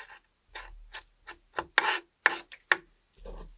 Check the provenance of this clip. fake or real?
real